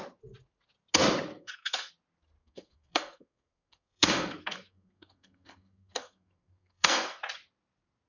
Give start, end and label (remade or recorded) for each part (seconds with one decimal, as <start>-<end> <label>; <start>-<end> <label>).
0.0-1.3 recorded; 1.3-1.9 remade; 1.9-2.4 recorded; 2.4-7.2 remade; 7.2-8.1 recorded